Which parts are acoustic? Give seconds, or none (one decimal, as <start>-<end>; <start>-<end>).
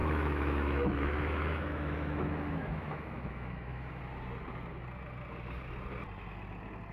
4.0-6.9